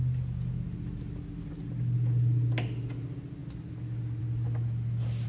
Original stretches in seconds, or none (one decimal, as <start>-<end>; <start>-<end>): 0.0-5.3